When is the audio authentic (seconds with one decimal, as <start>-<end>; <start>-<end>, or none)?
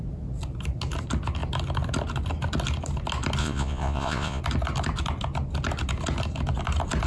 0.0-3.4; 4.4-7.1